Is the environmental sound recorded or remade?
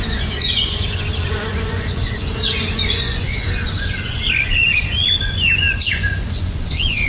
remade